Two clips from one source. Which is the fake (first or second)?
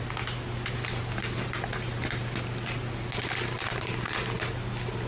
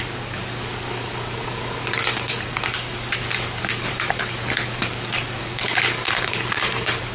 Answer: second